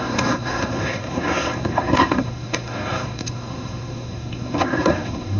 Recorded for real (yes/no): no